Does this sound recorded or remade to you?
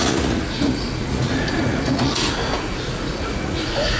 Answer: remade